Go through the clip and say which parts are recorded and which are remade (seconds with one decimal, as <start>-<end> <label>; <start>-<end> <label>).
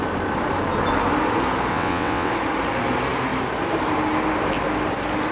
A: 0.0-1.7 recorded; 1.7-2.3 remade; 2.3-5.3 recorded